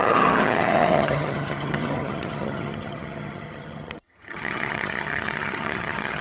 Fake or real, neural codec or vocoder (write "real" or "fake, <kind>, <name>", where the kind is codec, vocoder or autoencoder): fake, vocoder, HiFi-GAN